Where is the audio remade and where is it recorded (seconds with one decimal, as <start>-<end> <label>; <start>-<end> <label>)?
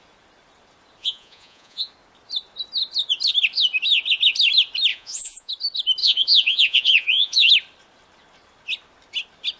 0.0-1.0 recorded; 1.0-1.9 remade; 1.9-4.9 recorded; 4.9-5.5 remade; 5.5-6.0 recorded; 6.0-7.5 remade; 7.5-9.6 recorded